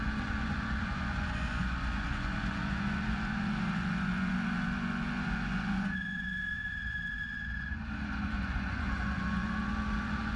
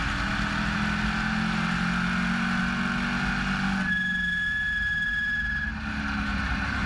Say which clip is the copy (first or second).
first